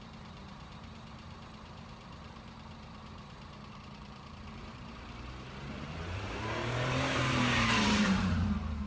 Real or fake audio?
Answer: fake